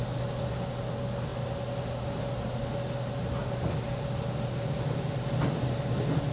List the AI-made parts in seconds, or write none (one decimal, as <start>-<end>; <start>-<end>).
none